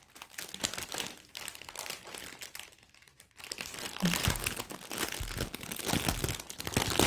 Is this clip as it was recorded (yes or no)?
yes